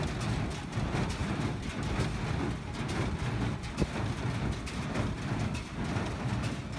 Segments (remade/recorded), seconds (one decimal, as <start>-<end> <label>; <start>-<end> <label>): 0.0-6.8 recorded